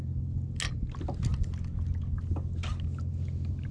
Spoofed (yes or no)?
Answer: no